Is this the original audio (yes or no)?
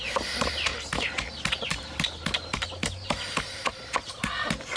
yes